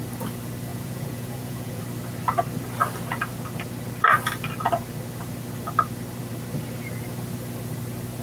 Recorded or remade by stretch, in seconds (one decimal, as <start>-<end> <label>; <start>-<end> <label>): 0.0-0.7 recorded; 0.7-1.8 remade; 1.8-8.2 recorded